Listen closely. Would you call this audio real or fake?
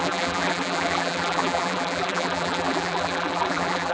fake